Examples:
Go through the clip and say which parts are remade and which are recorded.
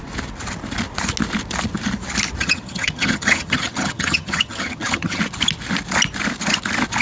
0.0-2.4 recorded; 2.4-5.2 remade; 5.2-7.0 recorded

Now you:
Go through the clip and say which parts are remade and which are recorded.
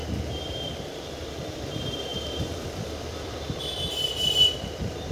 0.0-5.1 remade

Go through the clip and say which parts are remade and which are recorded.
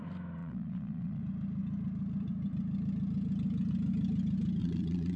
0.0-0.4 recorded; 0.4-1.2 remade; 1.2-4.6 recorded; 4.6-5.2 remade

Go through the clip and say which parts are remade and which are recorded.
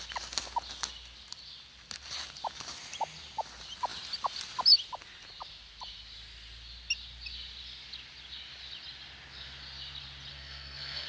0.0-10.3 recorded; 10.3-11.1 remade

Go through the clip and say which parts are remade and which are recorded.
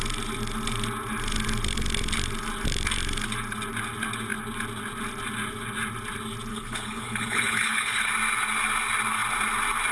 0.0-6.5 recorded; 6.5-8.1 remade; 8.1-9.9 recorded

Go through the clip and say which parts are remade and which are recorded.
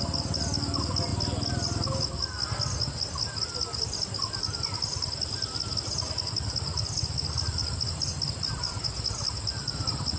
0.0-10.2 recorded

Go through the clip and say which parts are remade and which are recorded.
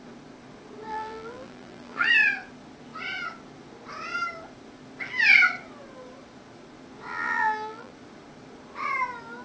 0.0-0.9 recorded; 0.9-2.1 remade; 2.1-7.1 recorded; 7.1-7.9 remade; 7.9-9.4 recorded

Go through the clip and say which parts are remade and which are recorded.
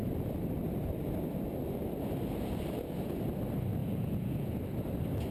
0.0-3.8 recorded; 3.8-4.5 remade; 4.5-5.3 recorded